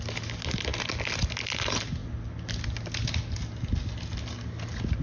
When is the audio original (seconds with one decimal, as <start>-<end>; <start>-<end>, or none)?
0.0-5.0